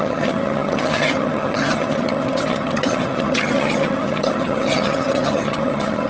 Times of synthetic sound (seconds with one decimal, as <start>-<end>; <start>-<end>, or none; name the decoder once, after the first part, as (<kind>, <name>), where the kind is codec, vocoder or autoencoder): 0.0-6.1 (vocoder, HiFi-GAN)